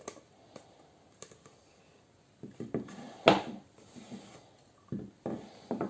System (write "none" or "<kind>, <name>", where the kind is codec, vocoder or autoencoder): none